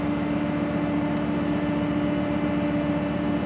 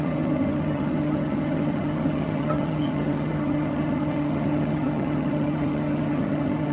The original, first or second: first